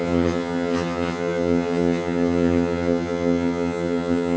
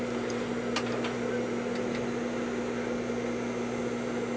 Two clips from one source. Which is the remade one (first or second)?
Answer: first